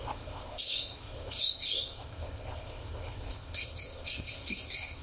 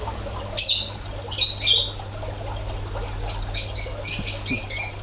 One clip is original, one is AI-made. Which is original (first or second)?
second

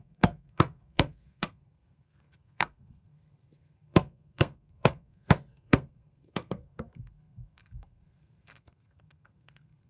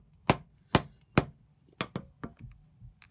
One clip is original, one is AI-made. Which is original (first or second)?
second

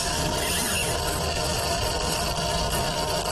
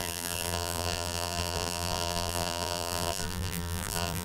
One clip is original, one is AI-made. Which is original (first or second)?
first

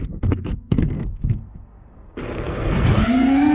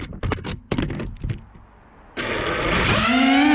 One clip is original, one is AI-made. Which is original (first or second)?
second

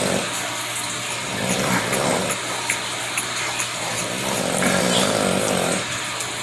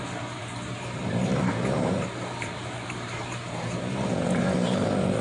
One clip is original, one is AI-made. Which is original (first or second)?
first